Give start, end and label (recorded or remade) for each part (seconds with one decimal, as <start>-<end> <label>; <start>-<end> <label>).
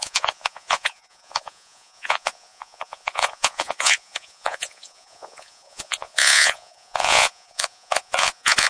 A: 0.0-8.7 remade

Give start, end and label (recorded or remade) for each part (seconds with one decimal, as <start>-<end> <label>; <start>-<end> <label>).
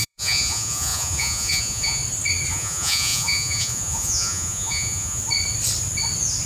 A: 0.0-2.0 remade; 2.0-2.5 recorded; 2.5-5.2 remade; 5.2-6.5 recorded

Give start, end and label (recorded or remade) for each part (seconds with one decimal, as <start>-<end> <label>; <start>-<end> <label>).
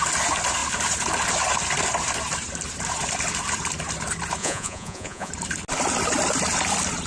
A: 0.0-4.4 recorded; 4.4-5.3 remade; 5.3-7.1 recorded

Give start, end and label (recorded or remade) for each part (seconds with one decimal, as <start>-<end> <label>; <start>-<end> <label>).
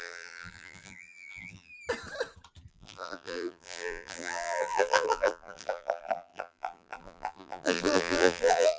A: 0.0-1.7 remade; 1.7-2.7 recorded; 2.7-8.8 remade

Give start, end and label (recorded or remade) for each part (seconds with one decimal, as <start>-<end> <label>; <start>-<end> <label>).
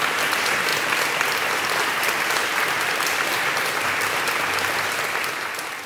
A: 0.0-0.7 recorded; 0.7-4.2 remade; 4.2-5.9 recorded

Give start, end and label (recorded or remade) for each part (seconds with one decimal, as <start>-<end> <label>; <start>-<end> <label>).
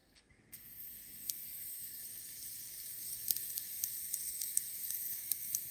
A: 0.0-2.0 remade; 2.0-2.9 recorded; 2.9-5.7 remade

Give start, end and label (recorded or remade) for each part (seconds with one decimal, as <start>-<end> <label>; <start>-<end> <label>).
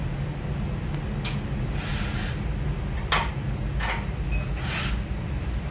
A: 0.0-5.7 recorded